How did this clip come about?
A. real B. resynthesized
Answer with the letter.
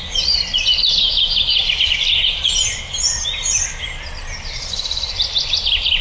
B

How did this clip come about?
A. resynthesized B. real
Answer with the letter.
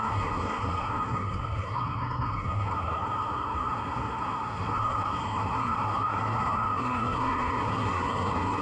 A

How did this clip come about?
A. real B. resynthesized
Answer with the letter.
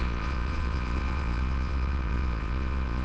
B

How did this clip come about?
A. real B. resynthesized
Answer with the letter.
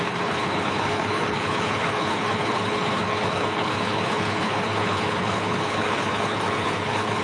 B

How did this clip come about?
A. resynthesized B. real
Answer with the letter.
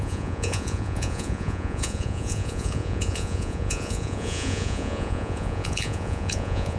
A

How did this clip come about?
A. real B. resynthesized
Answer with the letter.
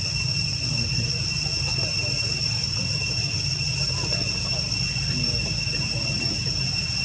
A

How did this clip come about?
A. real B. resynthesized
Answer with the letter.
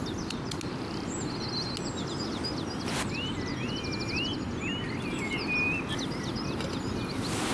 A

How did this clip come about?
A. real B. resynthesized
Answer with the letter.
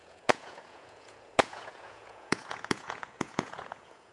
B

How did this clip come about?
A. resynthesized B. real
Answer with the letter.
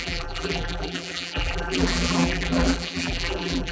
A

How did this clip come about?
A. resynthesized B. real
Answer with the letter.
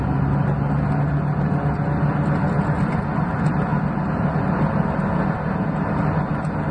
B